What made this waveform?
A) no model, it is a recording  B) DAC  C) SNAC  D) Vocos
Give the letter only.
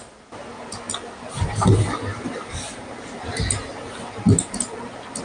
A